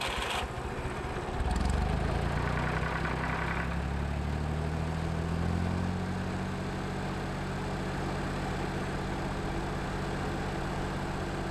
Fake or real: real